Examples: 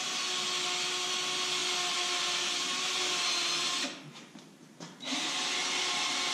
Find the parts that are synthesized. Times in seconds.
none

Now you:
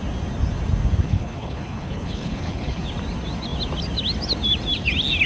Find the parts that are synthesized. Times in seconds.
1.0-2.8 (codec, HILCodec)

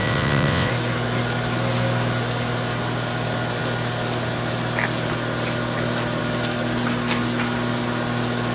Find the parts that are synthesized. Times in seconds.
0.0-0.7 (vocoder, WaveNeXt)

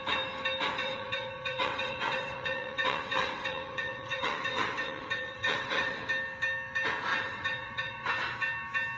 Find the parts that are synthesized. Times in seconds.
0.8-6.0 (vocoder, WaveNeXt); 7.1-8.1

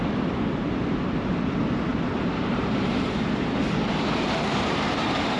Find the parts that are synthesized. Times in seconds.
1.9-5.4 (vocoder, BigVGAN v2)